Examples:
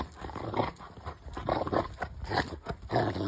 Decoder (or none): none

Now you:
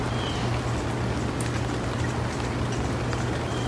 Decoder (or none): none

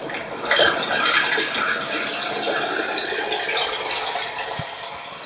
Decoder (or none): none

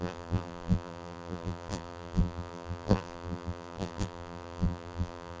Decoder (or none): vocoder, BigVGAN v2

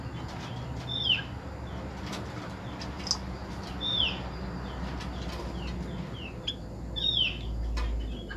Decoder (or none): none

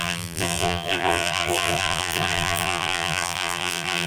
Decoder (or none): vocoder, BigVGAN v2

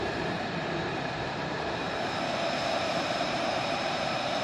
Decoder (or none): vocoder, BigVGAN v2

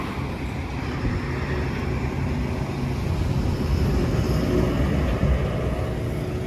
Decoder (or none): none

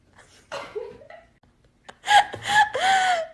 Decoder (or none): none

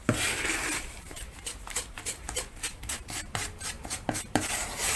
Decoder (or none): vocoder, BigVGAN v2